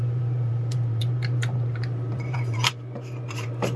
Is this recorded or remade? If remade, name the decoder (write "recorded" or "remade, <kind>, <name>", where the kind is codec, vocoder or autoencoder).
remade, vocoder, BigVGAN v2